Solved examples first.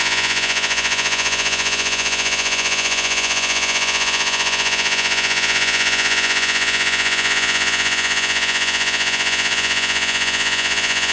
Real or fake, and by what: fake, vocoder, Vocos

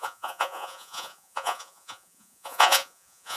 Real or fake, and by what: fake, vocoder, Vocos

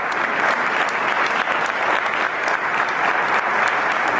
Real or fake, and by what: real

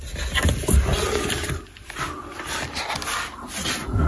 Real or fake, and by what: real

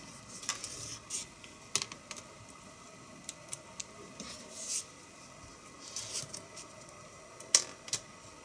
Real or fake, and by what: real